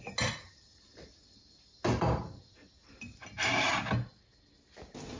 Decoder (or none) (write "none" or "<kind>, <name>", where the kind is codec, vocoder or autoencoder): none